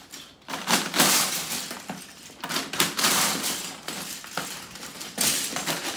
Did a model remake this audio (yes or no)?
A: yes